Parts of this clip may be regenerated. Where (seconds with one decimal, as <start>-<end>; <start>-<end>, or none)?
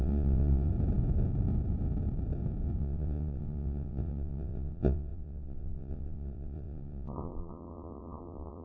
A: 0.0-0.7; 2.8-8.6